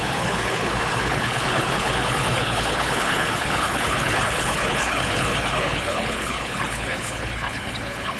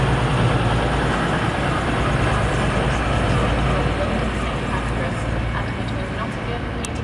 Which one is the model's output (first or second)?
first